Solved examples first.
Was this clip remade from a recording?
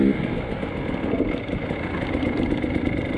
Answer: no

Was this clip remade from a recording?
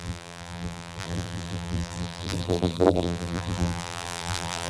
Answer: yes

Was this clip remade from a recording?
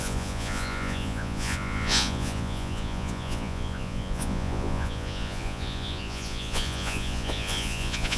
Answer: yes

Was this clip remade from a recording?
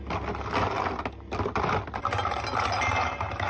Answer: no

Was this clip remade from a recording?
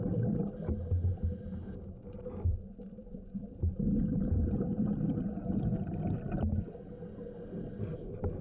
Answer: no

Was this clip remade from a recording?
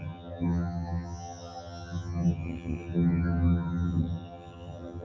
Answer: yes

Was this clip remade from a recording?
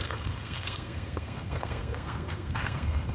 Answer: yes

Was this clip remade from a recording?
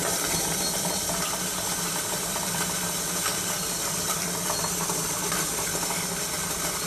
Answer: no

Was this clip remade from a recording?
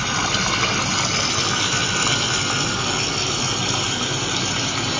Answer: no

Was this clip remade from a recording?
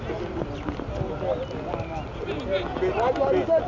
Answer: no